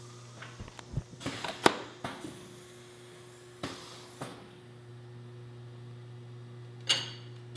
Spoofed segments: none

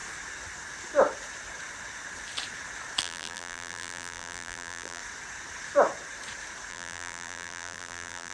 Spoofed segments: 3.0-5.0 (vocoder, BigVGAN v2); 6.7-8.3

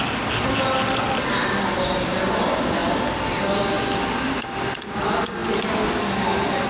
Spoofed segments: none

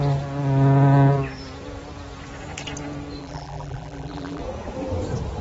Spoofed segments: 3.2-4.4 (vocoder, BigVGAN v2)

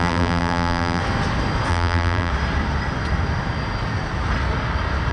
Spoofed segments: 0.0-1.0 (vocoder, BigVGAN v2); 1.7-2.3

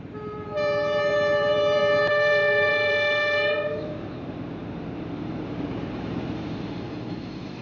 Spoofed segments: 0.0-7.6 (vocoder, BigVGAN v2)

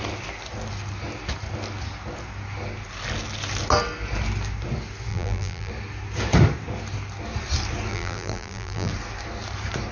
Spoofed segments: 5.1-5.7 (vocoder, BigVGAN v2); 7.9-8.9

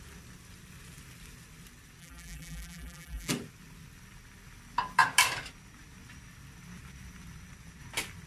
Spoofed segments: 2.0-3.3 (vocoder, BigVGAN v2)